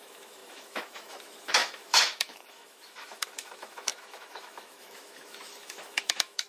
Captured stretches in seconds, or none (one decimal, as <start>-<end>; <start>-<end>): none